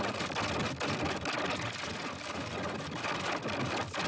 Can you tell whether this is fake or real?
real